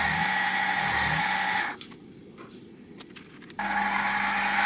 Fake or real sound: real